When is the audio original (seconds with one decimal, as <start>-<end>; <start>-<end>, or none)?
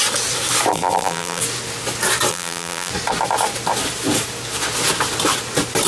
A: 0.0-0.7; 1.4-2.3; 2.9-5.9